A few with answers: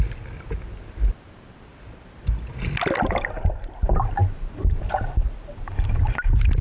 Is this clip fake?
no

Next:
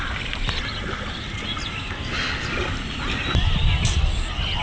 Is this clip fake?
no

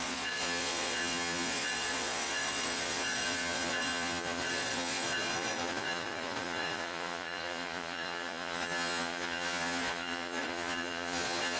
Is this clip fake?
yes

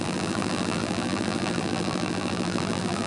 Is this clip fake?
yes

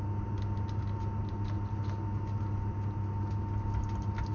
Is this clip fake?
no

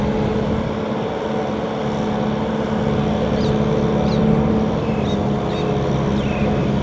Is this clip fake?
no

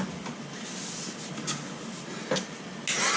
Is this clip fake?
no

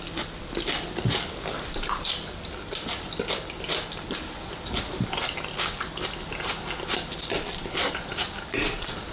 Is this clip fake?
no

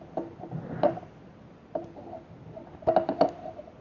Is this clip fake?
no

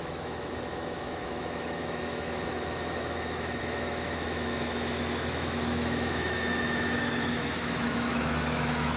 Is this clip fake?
yes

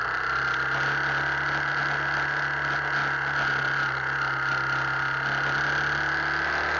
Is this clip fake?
no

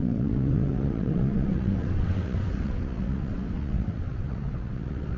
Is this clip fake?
yes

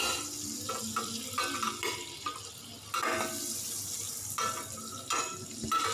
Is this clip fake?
no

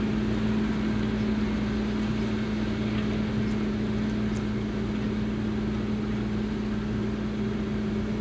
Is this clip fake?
no